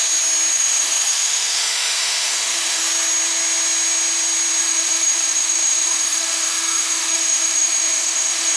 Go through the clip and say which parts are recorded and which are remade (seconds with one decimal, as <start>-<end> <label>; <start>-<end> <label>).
0.0-0.5 recorded; 0.5-2.8 remade; 2.8-4.6 recorded; 4.6-8.6 remade